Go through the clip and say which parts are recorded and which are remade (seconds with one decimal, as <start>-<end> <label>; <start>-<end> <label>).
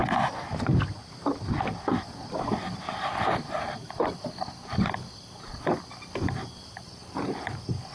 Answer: 0.0-7.9 recorded